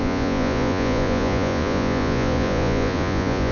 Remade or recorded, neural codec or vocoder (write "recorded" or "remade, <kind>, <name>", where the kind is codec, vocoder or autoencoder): remade, vocoder, Vocos